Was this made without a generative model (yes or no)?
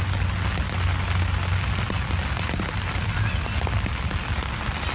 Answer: yes